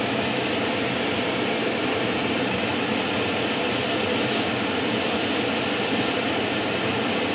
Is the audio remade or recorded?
recorded